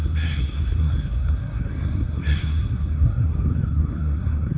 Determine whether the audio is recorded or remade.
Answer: remade